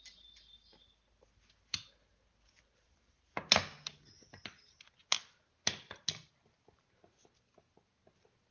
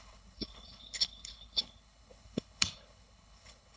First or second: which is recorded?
first